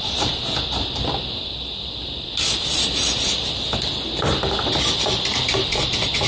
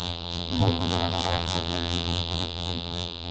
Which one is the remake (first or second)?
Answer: second